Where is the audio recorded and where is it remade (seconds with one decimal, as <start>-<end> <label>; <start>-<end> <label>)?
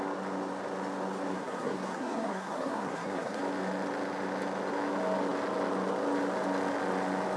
0.0-1.3 recorded; 1.3-3.4 remade; 3.4-7.4 recorded